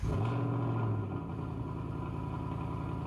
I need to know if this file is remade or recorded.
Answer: recorded